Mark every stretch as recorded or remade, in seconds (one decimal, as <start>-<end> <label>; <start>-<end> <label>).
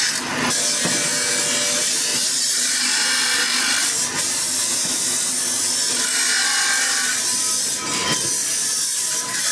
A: 0.0-2.1 recorded; 2.1-5.4 remade; 5.4-8.4 recorded; 8.4-9.5 remade